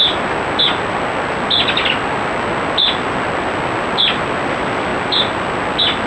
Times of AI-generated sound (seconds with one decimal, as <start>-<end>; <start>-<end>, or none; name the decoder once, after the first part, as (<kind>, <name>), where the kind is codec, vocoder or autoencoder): none